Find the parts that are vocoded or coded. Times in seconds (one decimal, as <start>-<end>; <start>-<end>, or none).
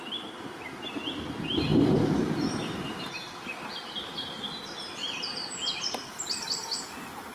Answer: 1.7-6.1